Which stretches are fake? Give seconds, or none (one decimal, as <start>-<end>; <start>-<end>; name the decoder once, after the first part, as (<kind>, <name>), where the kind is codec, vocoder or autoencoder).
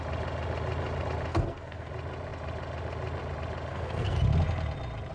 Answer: 1.3-1.9 (codec, SNAC); 3.7-4.2